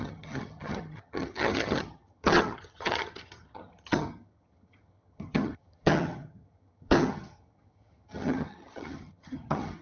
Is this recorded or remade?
remade